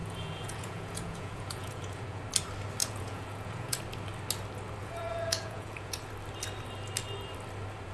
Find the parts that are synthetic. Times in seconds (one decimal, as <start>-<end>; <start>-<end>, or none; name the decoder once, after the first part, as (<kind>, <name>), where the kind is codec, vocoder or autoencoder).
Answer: 0.0-2.2 (vocoder, Vocos); 2.8-3.8; 4.8-6.1